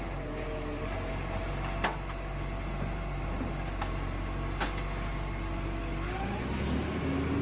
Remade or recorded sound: recorded